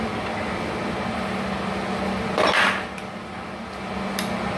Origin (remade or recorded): recorded